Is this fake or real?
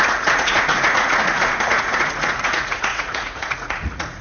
fake